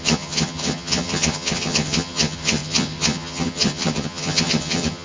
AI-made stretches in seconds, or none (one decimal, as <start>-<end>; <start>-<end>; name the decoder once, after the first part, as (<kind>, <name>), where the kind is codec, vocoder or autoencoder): 0.0-5.0 (vocoder, HiFi-GAN)